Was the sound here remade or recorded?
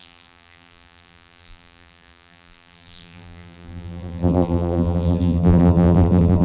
remade